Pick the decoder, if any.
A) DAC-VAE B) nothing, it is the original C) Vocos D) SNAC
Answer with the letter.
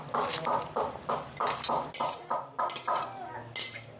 B